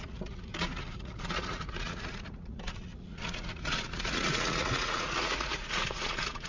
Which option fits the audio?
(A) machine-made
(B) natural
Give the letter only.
A